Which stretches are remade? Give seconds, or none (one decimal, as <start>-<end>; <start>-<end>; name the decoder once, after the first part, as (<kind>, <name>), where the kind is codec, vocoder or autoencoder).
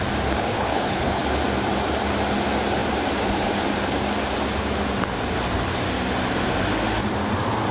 0.5-1.2 (codec, HILCodec)